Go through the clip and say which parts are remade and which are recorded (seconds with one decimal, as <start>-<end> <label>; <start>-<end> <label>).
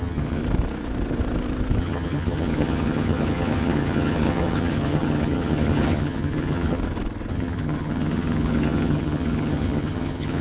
0.0-0.4 remade; 0.4-1.8 recorded; 1.8-6.8 remade; 6.8-7.3 recorded; 7.3-10.4 remade